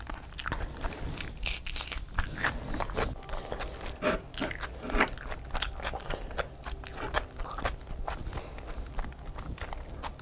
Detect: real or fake real